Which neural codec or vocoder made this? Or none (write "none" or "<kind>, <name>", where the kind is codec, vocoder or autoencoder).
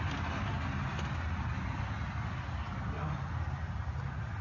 none